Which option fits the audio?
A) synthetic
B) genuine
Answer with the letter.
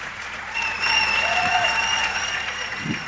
A